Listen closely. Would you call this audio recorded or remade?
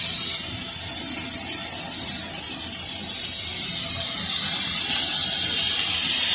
recorded